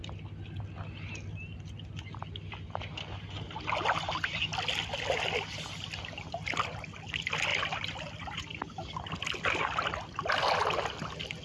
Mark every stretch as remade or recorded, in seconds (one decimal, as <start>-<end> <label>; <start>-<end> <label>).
0.0-11.4 recorded